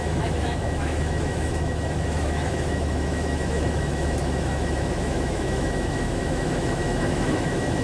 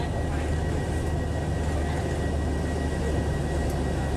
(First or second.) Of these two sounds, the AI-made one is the first